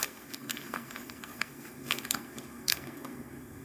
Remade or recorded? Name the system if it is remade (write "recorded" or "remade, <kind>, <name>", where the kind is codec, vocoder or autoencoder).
remade, codec, SNAC